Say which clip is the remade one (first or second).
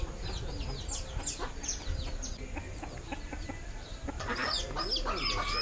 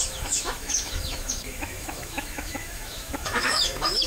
second